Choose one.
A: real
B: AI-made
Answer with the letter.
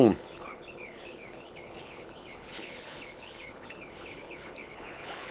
B